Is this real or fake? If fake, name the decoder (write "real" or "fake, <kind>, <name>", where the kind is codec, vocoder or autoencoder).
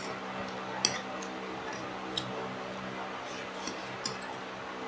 real